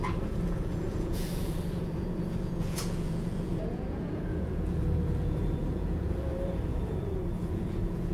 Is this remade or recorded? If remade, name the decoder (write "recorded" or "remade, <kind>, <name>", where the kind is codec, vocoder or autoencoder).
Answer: remade, vocoder, Vocos